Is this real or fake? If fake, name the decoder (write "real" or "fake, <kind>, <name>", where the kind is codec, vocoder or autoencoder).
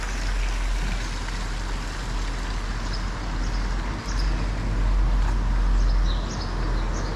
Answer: real